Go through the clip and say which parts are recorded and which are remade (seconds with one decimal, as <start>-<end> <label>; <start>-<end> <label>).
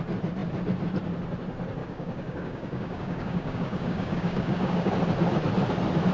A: 0.0-1.8 recorded; 1.8-4.9 remade; 4.9-6.1 recorded